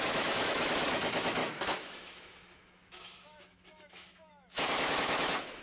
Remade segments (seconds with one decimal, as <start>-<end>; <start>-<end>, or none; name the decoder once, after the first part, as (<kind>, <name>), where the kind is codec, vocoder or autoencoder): 0.0-5.6 (autoencoder, DAC-VAE)